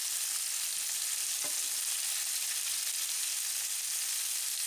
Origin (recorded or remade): recorded